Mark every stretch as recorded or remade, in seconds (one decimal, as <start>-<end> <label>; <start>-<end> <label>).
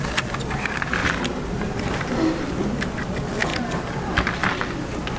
0.0-1.0 recorded; 1.0-2.1 remade; 2.1-3.5 recorded; 3.5-4.0 remade; 4.0-5.2 recorded